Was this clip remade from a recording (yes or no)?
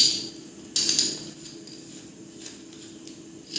no